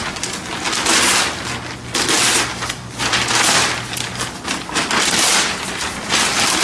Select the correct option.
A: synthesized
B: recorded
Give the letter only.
B